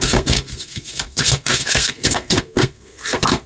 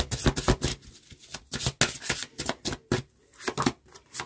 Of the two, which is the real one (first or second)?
second